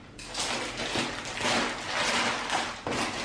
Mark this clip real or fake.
real